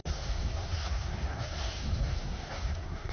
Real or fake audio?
fake